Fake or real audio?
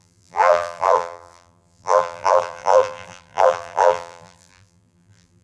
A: fake